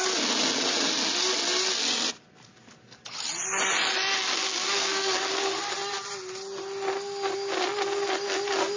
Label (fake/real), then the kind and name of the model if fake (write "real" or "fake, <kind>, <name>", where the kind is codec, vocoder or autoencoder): real